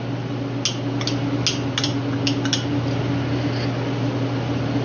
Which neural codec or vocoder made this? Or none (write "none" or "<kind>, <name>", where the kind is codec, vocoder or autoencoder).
none